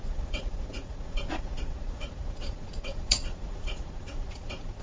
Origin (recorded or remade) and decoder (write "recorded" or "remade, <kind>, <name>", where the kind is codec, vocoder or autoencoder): remade, vocoder, Vocos